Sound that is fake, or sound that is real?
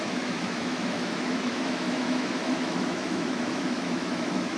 fake